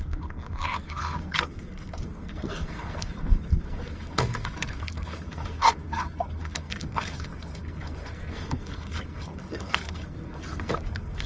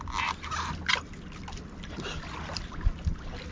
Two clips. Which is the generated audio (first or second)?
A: first